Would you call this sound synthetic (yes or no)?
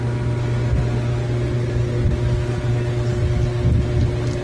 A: no